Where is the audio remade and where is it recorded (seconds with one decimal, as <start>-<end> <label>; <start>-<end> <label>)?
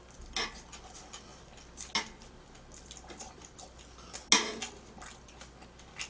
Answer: 0.0-6.1 recorded